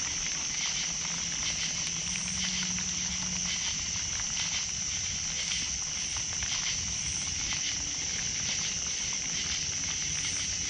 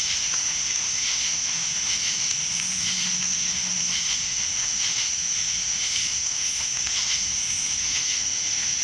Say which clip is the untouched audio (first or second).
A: first